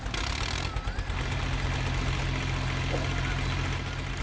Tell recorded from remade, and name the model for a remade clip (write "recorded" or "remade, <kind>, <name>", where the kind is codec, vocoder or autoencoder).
recorded